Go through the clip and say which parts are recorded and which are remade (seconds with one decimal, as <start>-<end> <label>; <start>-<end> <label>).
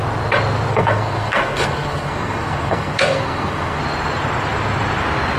0.0-0.7 recorded; 0.7-3.8 remade; 3.8-5.4 recorded